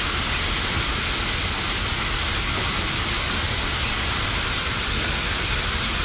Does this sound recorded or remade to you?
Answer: recorded